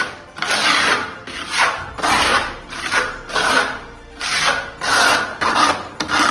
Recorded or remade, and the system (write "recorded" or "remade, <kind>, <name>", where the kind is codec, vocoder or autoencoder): recorded